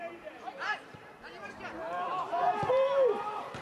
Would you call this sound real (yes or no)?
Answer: no